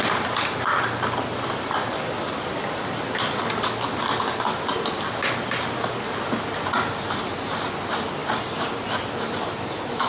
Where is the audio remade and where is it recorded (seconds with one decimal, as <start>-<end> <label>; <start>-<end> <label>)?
0.0-10.1 recorded